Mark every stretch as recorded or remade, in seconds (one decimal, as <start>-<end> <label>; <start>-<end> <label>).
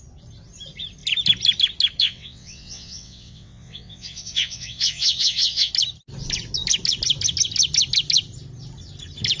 0.0-2.0 recorded; 2.0-5.7 remade; 5.7-9.4 recorded